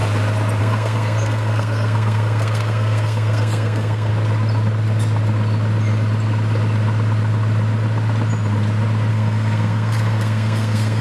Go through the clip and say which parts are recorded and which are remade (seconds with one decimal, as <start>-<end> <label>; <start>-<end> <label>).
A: 0.0-0.6 recorded; 0.6-4.1 remade; 4.1-9.1 recorded; 9.1-11.0 remade